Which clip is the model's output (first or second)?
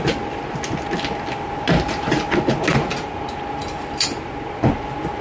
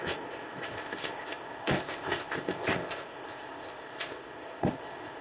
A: second